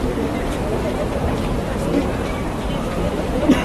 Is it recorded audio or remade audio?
remade